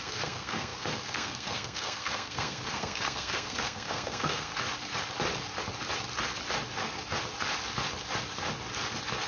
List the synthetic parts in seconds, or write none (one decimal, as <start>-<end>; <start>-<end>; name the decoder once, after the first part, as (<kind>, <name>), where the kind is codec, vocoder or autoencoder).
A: 0.0-4.5 (codec, SNAC)